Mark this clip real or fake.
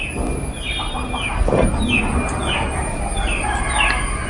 real